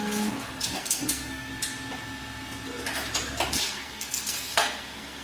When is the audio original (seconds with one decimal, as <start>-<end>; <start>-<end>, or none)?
1.5-3.5